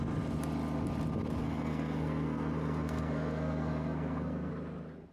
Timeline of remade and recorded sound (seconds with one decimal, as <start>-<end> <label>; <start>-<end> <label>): 0.0-1.4 recorded; 1.4-4.5 remade; 4.5-5.1 recorded